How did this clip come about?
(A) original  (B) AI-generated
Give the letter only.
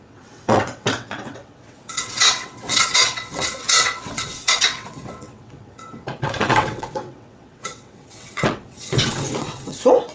B